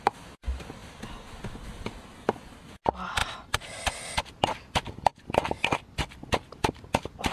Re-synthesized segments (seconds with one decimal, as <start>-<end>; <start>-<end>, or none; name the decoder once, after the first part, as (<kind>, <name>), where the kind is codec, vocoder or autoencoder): none